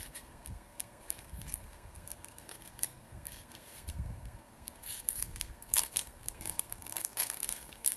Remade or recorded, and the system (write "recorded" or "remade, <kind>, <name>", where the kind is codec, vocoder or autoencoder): remade, codec, SNAC